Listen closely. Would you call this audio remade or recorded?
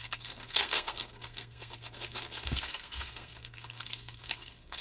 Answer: remade